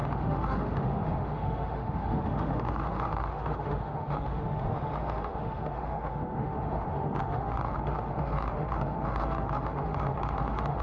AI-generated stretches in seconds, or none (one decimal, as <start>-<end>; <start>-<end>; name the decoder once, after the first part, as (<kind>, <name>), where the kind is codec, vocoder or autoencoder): 0.0-10.8 (autoencoder, DAC-VAE)